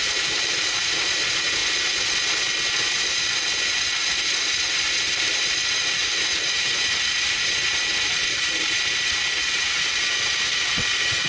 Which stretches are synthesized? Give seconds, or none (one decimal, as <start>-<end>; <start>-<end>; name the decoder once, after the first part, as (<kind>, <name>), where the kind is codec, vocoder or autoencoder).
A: 0.0-1.6 (vocoder, BigVGAN v2); 5.0-11.3

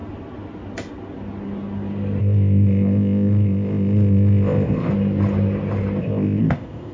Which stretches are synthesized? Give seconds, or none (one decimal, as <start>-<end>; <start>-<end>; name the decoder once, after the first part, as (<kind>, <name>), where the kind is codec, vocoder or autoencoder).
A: 2.2-4.9 (codec, ZipCodec); 6.0-6.9

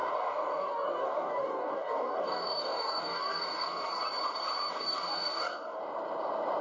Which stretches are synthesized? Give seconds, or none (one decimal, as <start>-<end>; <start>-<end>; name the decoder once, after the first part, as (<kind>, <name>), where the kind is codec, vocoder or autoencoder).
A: 0.0-4.0 (codec, DAC); 4.7-5.8

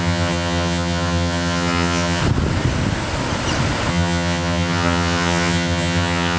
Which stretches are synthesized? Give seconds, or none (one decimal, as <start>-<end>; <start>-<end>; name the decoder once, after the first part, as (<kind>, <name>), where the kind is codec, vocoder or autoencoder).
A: 0.0-2.2 (vocoder, HiFi-GAN); 3.9-6.4

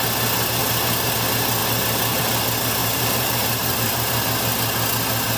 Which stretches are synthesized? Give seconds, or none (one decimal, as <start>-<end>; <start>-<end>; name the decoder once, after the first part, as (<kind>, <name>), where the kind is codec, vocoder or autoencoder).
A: 0.6-1.1 (vocoder, BigVGAN v2); 2.8-4.2

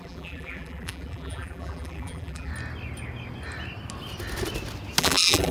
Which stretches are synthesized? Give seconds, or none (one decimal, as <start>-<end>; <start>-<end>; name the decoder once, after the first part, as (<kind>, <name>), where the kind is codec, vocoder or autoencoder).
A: 0.0-2.5 (vocoder, BigVGAN v2); 5.0-5.5

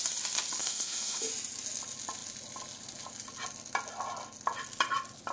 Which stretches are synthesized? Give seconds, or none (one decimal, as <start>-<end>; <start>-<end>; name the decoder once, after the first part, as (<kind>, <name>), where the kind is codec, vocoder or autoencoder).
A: 0.6-1.3 (autoencoder, DAC-VAE)